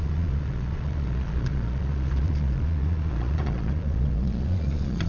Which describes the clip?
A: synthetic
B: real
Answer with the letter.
A